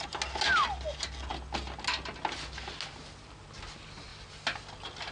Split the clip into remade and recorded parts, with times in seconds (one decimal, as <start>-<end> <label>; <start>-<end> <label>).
0.0-5.1 recorded

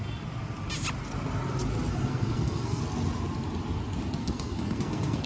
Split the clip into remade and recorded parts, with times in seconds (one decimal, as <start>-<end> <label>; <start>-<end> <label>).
0.0-1.9 recorded; 1.9-2.8 remade; 2.8-4.2 recorded; 4.2-5.3 remade

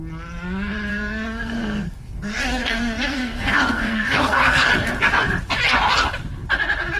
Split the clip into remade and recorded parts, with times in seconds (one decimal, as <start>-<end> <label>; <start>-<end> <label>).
0.0-0.9 recorded; 0.9-4.7 remade; 4.7-7.0 recorded

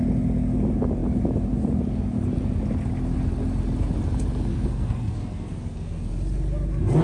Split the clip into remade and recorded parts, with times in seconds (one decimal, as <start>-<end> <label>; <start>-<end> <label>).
0.0-4.5 recorded; 4.5-6.1 remade; 6.1-7.0 recorded